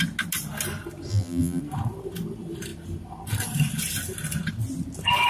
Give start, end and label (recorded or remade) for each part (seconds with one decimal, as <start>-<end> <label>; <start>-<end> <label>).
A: 0.0-1.1 recorded; 1.1-1.6 remade; 1.6-5.3 recorded